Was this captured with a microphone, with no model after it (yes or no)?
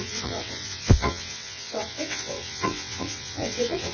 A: no